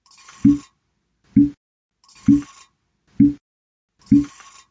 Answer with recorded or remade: recorded